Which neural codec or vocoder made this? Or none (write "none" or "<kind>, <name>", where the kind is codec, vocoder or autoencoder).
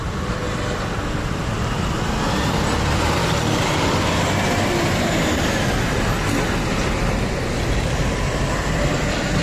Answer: none